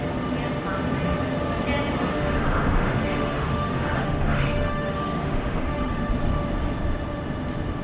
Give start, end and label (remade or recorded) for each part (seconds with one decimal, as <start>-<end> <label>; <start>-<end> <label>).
0.0-2.1 recorded; 2.1-6.1 remade; 6.1-7.8 recorded